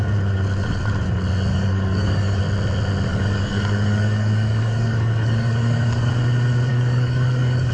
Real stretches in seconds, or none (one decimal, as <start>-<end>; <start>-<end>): 0.0-1.5; 2.4-3.1; 6.1-6.7